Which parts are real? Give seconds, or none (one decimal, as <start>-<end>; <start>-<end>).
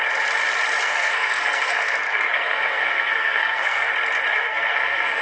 0.0-0.8; 3.9-4.3